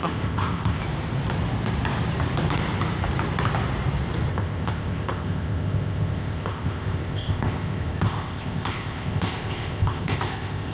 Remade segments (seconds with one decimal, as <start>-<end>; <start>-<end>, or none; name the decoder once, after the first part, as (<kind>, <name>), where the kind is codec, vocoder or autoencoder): 0.0-0.8 (codec, ZipCodec); 4.3-10.7